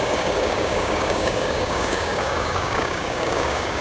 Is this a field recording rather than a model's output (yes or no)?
no